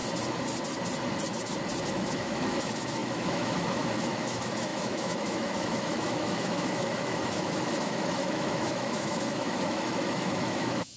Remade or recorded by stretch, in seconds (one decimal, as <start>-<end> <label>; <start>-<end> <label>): 0.0-1.9 recorded; 1.9-11.0 remade